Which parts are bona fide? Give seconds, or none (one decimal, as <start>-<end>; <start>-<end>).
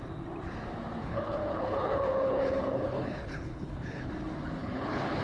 0.0-1.0; 4.1-4.6